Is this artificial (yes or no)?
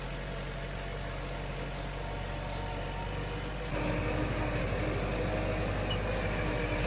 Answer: no